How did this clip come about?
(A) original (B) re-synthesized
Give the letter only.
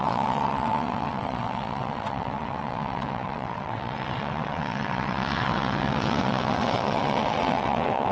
B